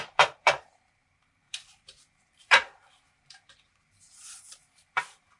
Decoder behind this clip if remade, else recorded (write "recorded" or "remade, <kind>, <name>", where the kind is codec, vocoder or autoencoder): remade, vocoder, BigVGAN v2